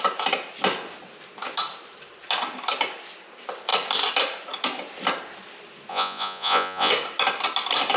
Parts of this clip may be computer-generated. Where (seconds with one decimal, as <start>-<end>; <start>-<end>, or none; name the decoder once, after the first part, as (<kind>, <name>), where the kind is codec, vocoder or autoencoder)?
5.9-6.9 (vocoder, Vocos)